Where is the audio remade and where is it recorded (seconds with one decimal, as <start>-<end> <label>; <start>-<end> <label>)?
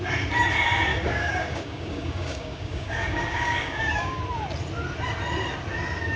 0.0-0.9 recorded; 0.9-4.2 remade; 4.2-6.2 recorded